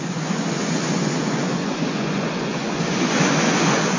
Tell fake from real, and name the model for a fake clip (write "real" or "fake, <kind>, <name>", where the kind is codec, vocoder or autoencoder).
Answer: fake, vocoder, Vocos